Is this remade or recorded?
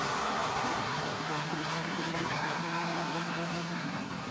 remade